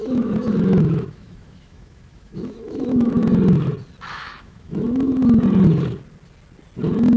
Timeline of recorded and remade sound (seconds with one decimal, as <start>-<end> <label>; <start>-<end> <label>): 0.0-3.2 remade; 3.2-4.1 recorded; 4.1-5.2 remade; 5.2-7.2 recorded